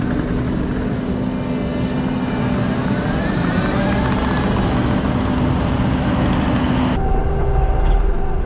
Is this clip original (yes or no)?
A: yes